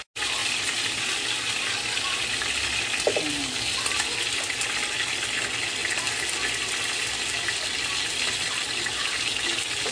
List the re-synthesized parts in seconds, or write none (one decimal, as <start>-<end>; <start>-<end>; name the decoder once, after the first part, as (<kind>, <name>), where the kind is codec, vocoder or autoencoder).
none